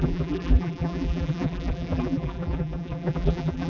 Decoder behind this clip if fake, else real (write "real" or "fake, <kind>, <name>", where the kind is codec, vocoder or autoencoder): fake, vocoder, BigVGAN v2